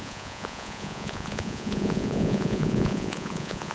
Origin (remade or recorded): remade